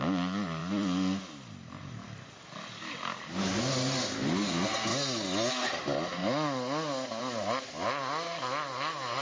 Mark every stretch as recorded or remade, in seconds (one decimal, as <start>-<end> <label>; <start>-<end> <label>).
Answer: 0.0-9.2 recorded